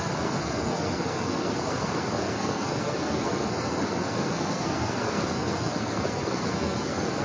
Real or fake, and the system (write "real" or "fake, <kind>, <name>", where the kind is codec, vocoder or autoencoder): fake, codec, SNAC